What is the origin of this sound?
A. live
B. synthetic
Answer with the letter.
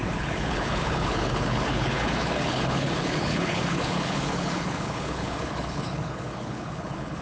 B